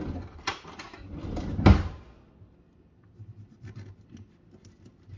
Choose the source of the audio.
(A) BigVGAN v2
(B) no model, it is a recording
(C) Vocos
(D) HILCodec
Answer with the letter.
B